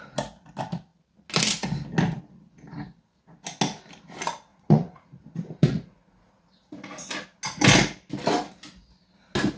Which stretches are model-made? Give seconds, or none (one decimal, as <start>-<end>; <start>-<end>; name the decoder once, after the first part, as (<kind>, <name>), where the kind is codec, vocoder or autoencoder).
4.5-6.5 (vocoder, Vocos)